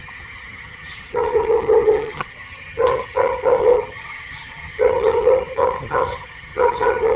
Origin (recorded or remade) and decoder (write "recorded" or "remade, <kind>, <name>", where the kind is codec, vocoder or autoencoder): remade, vocoder, HiFi-GAN